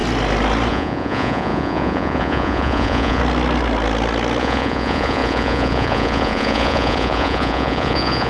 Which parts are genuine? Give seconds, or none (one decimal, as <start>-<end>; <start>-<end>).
0.0-0.7; 3.2-4.4